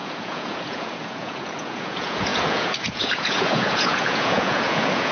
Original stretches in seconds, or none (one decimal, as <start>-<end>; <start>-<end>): none